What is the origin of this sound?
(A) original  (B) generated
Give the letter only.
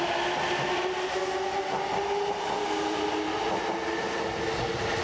A